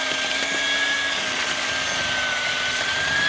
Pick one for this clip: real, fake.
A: real